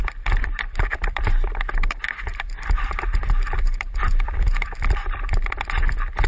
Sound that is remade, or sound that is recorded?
remade